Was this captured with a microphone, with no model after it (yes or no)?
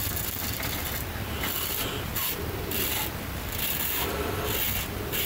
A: yes